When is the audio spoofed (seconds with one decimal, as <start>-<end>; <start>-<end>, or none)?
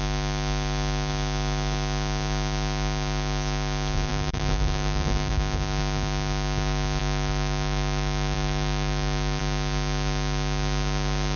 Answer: 4.1-5.3; 7.0-9.4